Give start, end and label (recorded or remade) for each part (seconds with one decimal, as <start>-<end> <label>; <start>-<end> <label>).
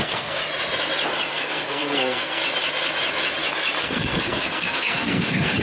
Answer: 0.0-0.4 remade; 0.4-1.3 recorded; 1.3-2.4 remade; 2.4-3.8 recorded; 3.8-5.6 remade